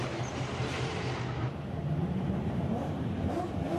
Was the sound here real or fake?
fake